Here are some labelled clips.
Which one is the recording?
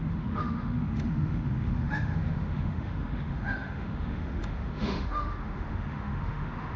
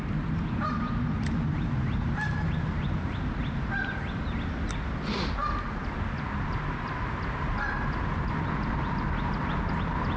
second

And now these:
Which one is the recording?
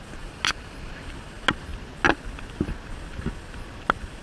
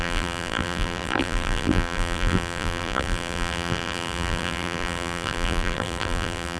first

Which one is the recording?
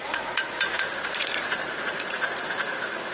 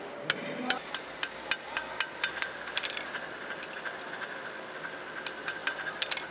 second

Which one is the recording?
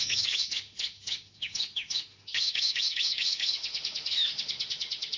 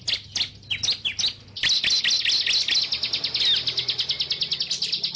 second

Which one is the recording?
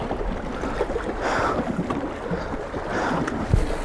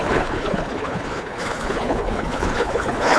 first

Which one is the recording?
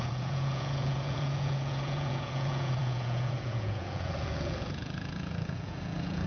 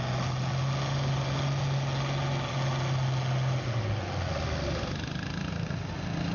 second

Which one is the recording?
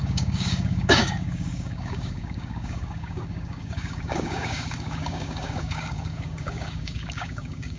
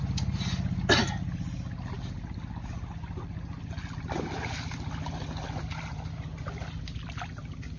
second